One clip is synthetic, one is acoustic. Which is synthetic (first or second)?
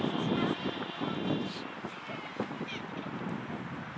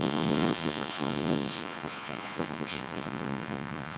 second